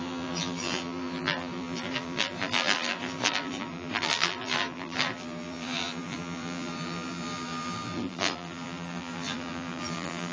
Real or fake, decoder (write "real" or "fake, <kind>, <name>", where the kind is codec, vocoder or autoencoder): fake, vocoder, BigVGAN v2